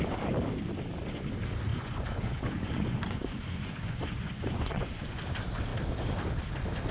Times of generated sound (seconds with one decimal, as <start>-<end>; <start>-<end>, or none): 1.7-5.2